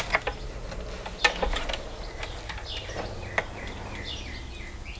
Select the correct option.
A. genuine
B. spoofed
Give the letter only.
A